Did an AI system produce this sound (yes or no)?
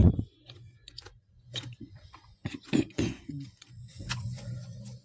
yes